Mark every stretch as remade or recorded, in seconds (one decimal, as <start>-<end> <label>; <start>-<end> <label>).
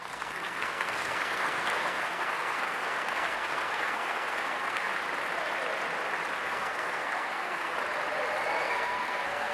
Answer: 0.0-4.9 remade; 4.9-6.4 recorded; 6.4-7.8 remade; 7.8-8.6 recorded; 8.6-9.5 remade